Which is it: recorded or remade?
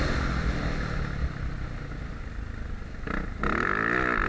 recorded